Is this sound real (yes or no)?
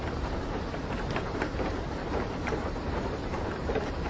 no